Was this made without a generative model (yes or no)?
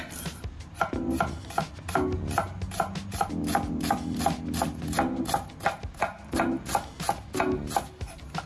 yes